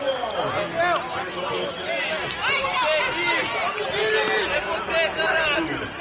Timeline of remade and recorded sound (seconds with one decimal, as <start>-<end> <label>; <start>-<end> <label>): 0.0-6.0 recorded